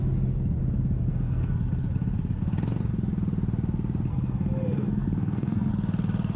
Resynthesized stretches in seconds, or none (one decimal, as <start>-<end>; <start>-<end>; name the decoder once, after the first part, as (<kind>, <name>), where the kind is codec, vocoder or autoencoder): 1.1-1.6 (codec, SNAC); 4.1-5.7